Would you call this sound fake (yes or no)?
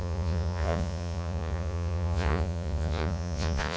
yes